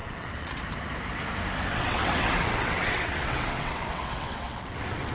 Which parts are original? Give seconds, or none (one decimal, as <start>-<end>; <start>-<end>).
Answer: 0.6-1.7